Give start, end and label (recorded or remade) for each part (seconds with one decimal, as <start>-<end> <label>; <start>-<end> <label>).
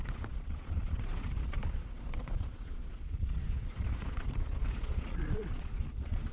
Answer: 0.0-6.3 remade